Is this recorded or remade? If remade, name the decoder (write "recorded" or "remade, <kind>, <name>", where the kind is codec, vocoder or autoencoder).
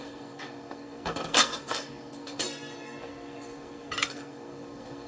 remade, codec, SNAC